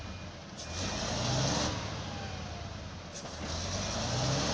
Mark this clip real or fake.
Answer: real